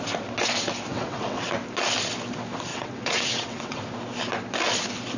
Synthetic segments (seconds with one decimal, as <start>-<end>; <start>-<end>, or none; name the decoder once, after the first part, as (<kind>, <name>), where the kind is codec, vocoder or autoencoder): 0.9-1.5 (vocoder, WaveNeXt); 2.7-3.8